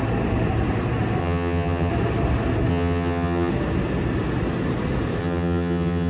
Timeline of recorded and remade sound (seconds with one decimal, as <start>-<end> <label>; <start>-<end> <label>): 0.0-1.2 recorded; 1.2-1.9 remade; 1.9-2.7 recorded; 2.7-3.5 remade; 3.5-5.2 recorded; 5.2-6.1 remade